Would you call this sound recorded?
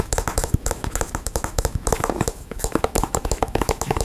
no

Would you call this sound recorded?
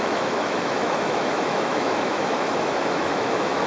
no